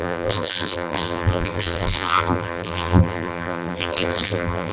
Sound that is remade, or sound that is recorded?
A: remade